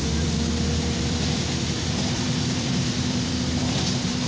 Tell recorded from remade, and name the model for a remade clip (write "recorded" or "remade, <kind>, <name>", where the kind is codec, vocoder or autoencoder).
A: remade, vocoder, BigVGAN v2